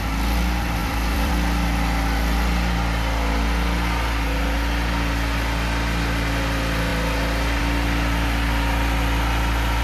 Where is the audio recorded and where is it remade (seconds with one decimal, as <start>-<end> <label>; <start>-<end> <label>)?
0.0-0.8 recorded; 0.8-1.3 remade; 1.3-9.8 recorded